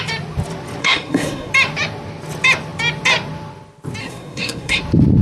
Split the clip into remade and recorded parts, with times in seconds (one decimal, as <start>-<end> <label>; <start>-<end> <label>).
0.0-0.8 recorded; 0.8-1.5 remade; 1.5-4.0 recorded; 4.0-4.8 remade; 4.8-5.2 recorded